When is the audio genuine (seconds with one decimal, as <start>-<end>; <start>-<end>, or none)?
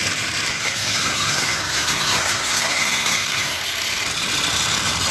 0.0-0.5; 3.6-5.1